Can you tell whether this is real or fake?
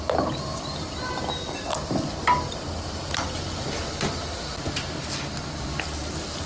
real